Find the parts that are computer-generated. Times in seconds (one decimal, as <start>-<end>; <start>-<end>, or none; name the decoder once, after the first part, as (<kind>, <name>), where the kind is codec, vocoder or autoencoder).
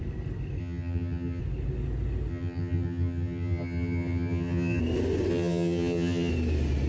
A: 0.6-1.4 (vocoder, HiFi-GAN); 2.3-4.8; 5.3-6.3